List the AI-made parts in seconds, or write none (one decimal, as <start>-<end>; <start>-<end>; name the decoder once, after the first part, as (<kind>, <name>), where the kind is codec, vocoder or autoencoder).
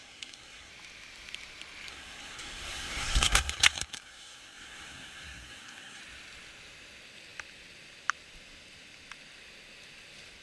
0.0-0.7 (codec, SNAC); 1.9-6.0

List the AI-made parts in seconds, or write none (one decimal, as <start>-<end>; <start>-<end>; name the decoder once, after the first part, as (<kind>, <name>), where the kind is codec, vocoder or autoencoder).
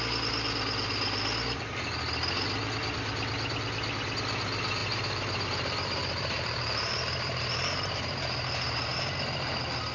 4.8-9.0 (vocoder, BigVGAN v2)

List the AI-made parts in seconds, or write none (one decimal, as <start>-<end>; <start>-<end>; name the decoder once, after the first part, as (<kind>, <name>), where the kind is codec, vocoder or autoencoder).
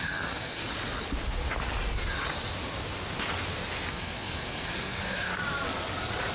0.0-0.6 (codec, SNAC); 3.9-5.3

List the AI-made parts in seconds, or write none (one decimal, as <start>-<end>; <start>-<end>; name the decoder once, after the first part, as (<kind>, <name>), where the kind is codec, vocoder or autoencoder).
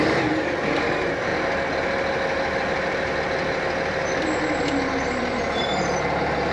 0.0-1.3 (vocoder, BigVGAN v2); 5.0-6.5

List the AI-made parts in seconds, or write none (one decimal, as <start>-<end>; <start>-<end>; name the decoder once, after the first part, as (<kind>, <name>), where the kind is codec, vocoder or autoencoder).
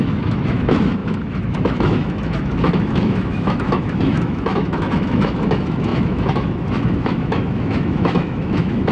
0.0-8.9 (autoencoder, DAC-VAE)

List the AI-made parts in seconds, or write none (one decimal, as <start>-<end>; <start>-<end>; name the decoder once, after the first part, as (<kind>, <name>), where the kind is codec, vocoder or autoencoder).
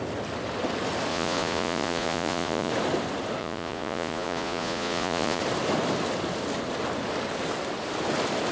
1.1-2.7 (vocoder, Vocos); 3.4-5.4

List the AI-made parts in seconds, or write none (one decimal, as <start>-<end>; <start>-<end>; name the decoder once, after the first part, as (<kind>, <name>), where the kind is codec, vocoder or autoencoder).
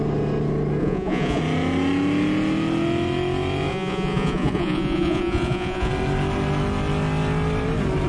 0.8-1.4 (vocoder, Vocos); 3.7-5.9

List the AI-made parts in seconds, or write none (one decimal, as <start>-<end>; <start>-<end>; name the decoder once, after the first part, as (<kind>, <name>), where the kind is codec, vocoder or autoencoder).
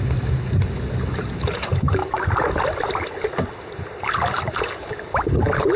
2.0-5.8 (vocoder, BigVGAN v2)